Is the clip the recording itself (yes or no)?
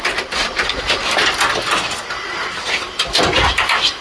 yes